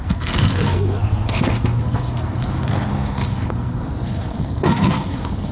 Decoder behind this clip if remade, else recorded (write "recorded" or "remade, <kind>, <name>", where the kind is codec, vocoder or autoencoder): remade, codec, SNAC